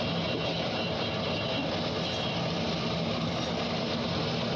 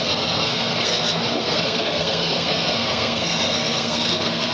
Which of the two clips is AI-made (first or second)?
second